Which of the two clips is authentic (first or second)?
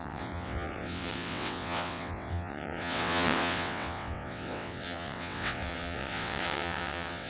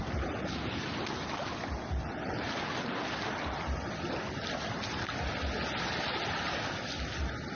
second